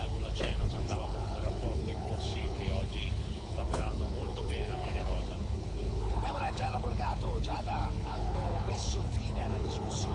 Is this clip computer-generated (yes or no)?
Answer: yes